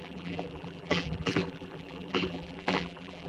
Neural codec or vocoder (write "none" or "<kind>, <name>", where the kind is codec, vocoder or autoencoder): vocoder, BigVGAN v2